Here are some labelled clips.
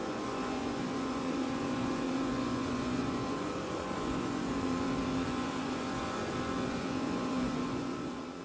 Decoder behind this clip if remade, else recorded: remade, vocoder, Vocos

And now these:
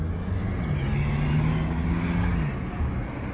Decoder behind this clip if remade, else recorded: recorded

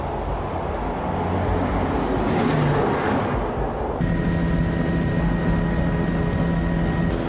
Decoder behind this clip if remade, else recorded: recorded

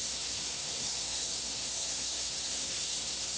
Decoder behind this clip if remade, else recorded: remade, codec, SNAC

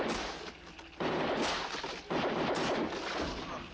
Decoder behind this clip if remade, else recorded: recorded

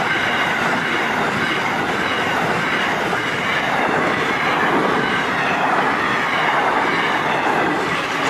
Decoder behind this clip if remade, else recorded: recorded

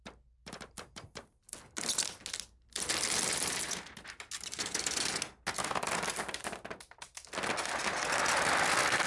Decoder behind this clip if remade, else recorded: recorded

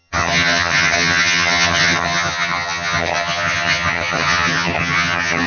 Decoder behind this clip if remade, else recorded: remade, vocoder, HiFi-GAN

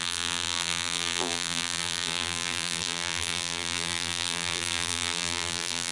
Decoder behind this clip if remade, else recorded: remade, vocoder, BigVGAN v2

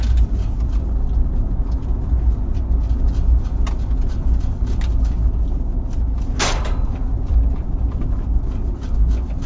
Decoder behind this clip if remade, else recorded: recorded